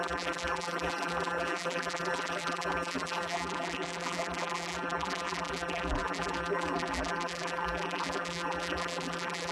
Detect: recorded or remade remade